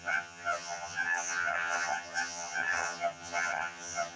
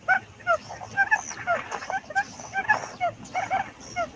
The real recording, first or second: second